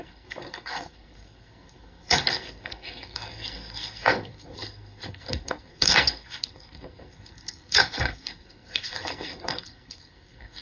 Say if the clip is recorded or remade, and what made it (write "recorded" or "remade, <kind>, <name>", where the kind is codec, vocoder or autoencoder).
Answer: remade, codec, SNAC